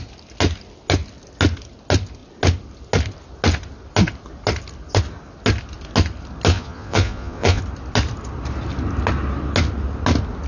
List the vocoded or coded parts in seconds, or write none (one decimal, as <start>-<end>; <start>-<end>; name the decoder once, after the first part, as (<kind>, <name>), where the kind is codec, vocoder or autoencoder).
6.5-7.6 (vocoder, Vocos)